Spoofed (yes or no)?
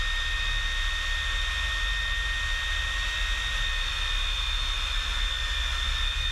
no